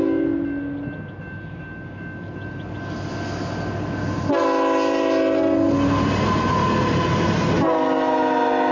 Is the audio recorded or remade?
recorded